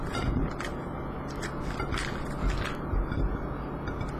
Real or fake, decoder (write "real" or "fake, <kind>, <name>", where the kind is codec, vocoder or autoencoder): real